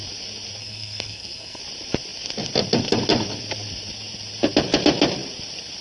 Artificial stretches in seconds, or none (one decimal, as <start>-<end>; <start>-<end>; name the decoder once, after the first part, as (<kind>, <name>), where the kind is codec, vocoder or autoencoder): 0.6-1.6 (codec, SNAC)